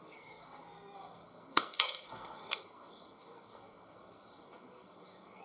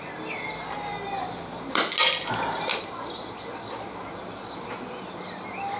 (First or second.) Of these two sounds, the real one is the second